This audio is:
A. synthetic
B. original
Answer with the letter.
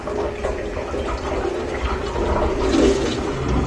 B